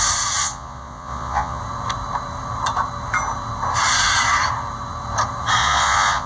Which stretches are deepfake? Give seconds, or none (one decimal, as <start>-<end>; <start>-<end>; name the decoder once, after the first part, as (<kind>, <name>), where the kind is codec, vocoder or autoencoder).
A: 0.4-1.6 (vocoder, Vocos); 5.6-6.3